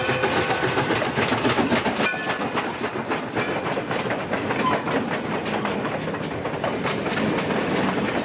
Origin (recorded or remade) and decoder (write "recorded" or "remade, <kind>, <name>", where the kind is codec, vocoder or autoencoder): recorded